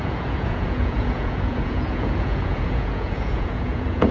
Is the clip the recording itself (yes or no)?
no